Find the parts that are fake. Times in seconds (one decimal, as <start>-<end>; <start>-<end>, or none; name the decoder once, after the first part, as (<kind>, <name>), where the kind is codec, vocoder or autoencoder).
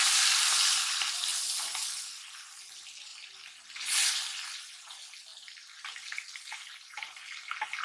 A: none